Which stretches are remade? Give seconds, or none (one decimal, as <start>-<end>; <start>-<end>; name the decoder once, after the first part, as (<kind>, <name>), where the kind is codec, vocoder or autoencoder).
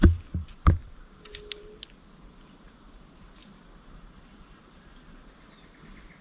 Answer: none